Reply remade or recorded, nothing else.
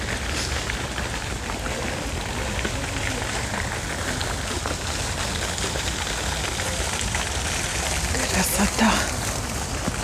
recorded